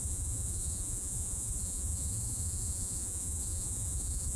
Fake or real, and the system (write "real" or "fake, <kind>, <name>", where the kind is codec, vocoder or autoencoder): fake, vocoder, Vocos